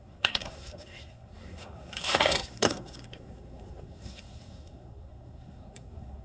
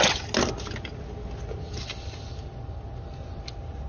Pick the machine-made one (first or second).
first